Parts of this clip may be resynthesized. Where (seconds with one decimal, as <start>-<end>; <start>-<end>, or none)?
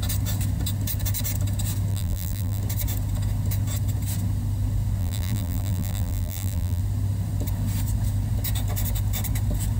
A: 1.9-2.6; 5.0-6.8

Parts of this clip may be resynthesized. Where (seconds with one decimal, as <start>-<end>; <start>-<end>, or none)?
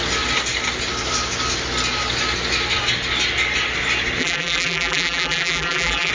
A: 4.2-6.1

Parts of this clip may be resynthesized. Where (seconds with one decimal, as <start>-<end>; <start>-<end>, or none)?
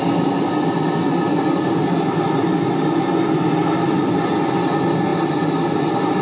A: none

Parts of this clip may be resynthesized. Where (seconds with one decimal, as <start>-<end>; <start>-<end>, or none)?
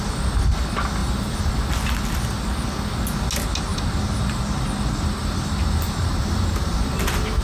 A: 1.0-1.5; 3.7-4.4; 5.2-6.7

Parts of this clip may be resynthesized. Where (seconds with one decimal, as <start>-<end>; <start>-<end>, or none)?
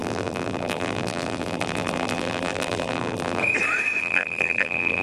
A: 0.0-3.4; 4.0-5.0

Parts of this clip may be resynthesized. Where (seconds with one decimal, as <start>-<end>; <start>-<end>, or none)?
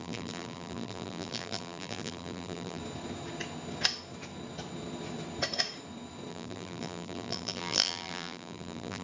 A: 0.0-2.8; 6.3-9.0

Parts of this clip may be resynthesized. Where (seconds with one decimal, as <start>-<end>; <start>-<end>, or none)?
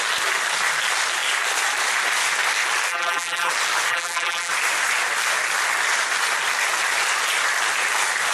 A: 2.9-3.5; 3.9-4.5